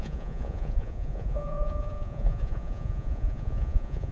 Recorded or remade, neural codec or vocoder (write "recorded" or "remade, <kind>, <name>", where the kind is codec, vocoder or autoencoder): remade, vocoder, Vocos